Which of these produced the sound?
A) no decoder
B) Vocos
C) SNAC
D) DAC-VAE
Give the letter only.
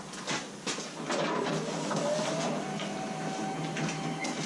A